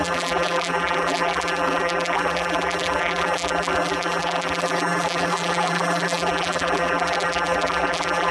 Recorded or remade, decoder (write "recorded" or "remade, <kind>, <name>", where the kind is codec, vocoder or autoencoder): remade, vocoder, BigVGAN v2